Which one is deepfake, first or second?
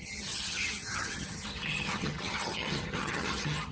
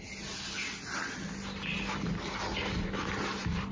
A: first